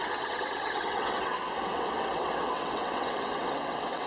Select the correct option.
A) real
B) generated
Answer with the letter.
B